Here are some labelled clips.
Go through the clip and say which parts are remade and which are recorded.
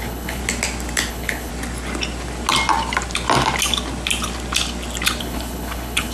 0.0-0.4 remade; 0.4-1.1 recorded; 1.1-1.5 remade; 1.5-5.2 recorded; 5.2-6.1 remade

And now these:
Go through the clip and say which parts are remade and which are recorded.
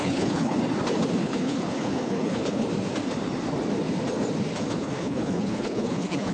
0.0-0.6 remade; 0.6-1.2 recorded; 1.2-2.6 remade; 2.6-4.7 recorded; 4.7-6.3 remade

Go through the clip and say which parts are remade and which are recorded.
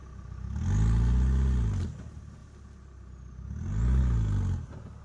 0.0-5.0 recorded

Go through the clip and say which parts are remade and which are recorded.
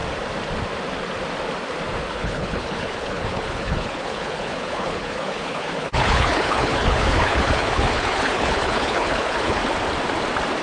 0.0-2.1 recorded; 2.1-9.6 remade; 9.6-10.6 recorded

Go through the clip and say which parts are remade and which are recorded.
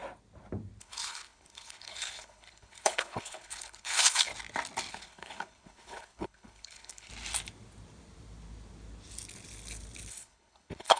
0.0-0.8 recorded; 0.8-4.3 remade; 4.3-4.9 recorded; 4.9-7.1 remade; 7.1-10.1 recorded; 10.1-11.0 remade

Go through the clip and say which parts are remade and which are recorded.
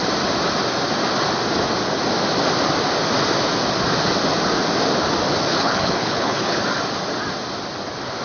0.0-5.5 recorded; 5.5-6.6 remade; 6.6-8.2 recorded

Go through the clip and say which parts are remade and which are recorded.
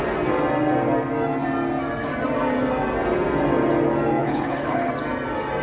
0.0-4.2 recorded; 4.2-4.9 remade; 4.9-5.6 recorded